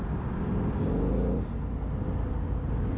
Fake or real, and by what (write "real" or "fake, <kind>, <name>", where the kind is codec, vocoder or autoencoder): real